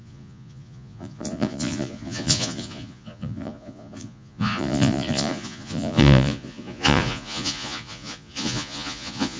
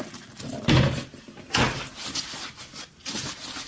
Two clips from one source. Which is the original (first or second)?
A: second